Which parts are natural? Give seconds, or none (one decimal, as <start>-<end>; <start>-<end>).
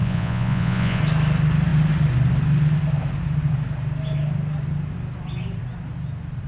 1.0-6.5